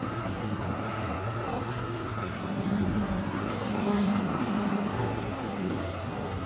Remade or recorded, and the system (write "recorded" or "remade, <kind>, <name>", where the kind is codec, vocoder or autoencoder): remade, codec, SNAC